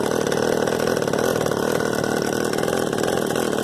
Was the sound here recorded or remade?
recorded